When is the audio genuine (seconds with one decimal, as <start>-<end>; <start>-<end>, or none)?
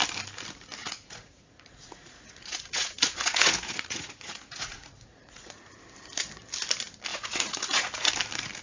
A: 0.0-0.8; 5.7-7.1; 8.1-8.6